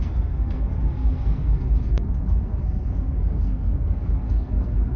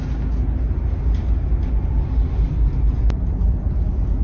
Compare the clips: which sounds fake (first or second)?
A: first